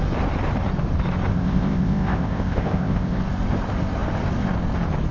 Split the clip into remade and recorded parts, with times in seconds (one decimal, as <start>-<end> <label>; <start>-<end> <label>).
0.0-1.3 recorded; 1.3-3.2 remade; 3.2-5.1 recorded